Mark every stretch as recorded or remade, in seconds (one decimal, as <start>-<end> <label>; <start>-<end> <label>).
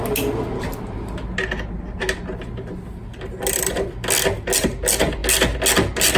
0.0-6.2 recorded